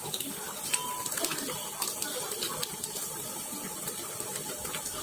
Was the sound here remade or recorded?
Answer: recorded